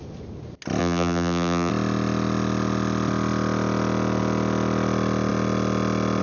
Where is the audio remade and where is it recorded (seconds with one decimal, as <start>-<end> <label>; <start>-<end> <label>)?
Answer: 0.0-0.8 recorded; 0.8-1.7 remade; 1.7-6.2 recorded